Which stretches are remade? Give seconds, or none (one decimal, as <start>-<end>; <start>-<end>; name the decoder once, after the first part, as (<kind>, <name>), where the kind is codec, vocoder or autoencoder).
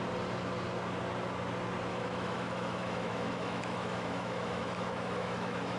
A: 1.9-5.8 (autoencoder, DAC-VAE)